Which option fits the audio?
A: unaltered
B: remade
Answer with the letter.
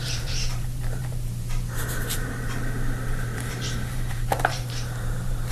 B